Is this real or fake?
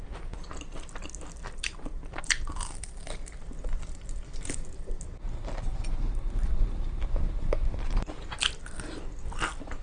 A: real